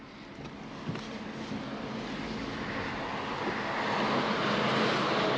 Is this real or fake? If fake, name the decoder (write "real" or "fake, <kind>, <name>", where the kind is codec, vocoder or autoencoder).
real